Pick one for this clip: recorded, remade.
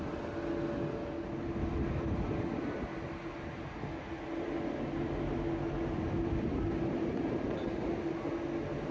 recorded